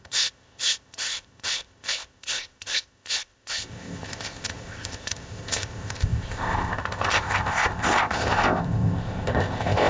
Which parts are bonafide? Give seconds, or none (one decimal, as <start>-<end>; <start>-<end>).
none